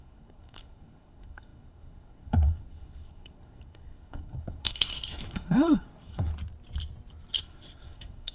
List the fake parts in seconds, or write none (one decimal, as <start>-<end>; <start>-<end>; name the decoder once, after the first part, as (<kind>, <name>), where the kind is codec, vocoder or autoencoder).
0.0-6.3 (codec, SNAC); 7.3-8.3